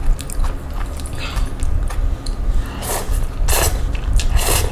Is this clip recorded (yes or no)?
yes